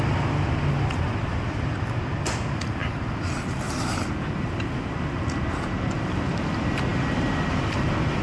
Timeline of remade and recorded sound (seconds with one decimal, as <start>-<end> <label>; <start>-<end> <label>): 0.0-8.2 recorded